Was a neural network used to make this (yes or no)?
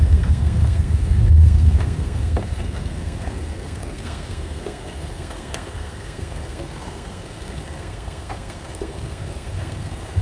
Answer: yes